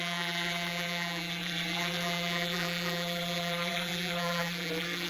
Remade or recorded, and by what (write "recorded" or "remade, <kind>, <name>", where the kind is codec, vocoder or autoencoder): remade, vocoder, BigVGAN v2